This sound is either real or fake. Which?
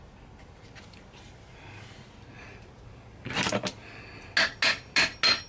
real